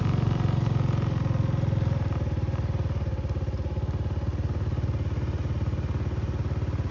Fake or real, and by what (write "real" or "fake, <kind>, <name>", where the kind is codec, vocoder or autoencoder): real